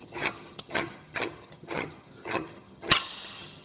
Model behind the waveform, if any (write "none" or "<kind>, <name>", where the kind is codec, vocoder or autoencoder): vocoder, HiFi-GAN